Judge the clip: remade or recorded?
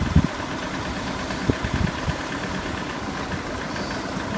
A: remade